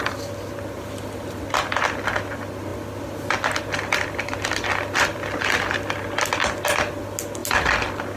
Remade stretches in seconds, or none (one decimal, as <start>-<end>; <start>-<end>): none